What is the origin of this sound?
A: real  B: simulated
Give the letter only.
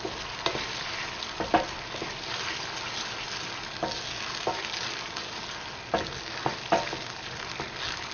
A